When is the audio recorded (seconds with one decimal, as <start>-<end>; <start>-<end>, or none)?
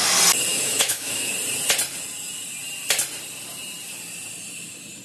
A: 0.0-0.5; 1.3-5.0